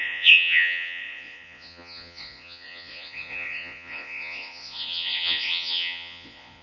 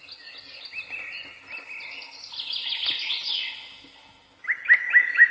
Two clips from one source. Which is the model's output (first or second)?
first